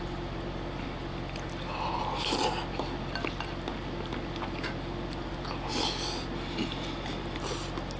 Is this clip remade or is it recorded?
recorded